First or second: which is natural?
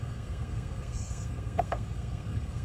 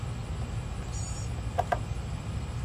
second